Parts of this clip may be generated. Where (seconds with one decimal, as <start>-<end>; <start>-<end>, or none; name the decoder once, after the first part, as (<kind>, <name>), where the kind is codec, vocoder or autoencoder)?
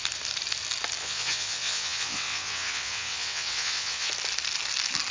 1.0-4.1 (vocoder, WaveNeXt)